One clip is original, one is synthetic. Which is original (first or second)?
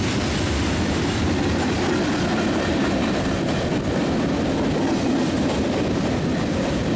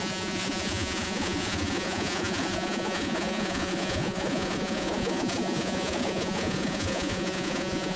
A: first